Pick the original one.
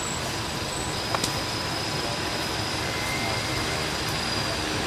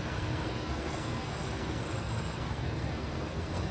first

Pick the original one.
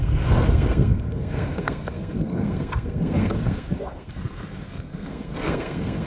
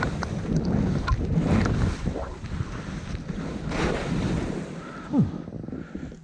second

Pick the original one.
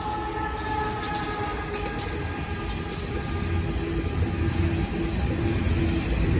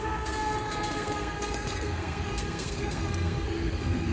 first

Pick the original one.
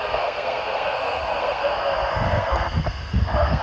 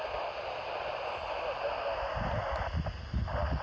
second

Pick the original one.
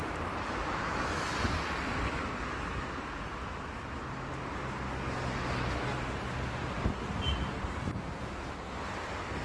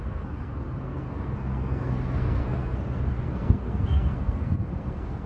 first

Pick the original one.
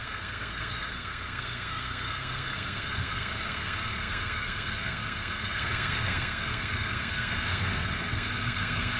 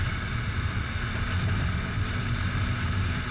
second